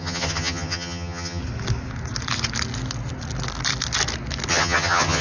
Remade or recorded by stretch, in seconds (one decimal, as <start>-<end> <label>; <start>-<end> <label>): 0.0-1.4 remade; 1.4-4.5 recorded; 4.5-5.2 remade